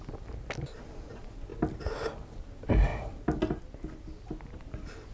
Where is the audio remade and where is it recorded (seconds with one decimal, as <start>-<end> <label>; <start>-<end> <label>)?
0.0-5.1 recorded